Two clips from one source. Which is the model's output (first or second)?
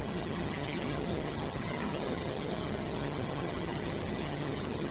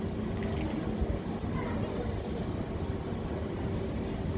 first